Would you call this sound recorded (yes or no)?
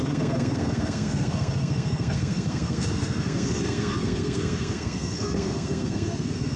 no